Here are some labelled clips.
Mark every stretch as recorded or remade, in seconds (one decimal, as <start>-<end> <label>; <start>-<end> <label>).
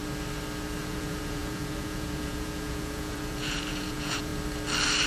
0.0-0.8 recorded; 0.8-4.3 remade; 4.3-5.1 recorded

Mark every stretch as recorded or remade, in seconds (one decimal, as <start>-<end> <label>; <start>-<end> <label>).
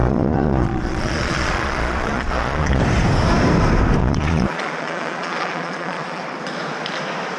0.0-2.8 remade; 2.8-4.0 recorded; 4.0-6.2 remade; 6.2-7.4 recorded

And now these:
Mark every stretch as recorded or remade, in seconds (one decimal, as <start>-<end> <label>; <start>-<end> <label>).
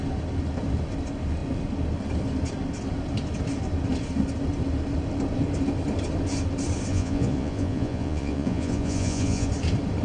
0.0-6.9 recorded; 6.9-9.5 remade; 9.5-10.0 recorded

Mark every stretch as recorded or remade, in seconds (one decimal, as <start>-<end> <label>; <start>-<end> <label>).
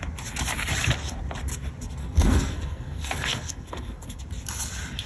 0.0-2.0 recorded; 2.0-4.2 remade; 4.2-5.1 recorded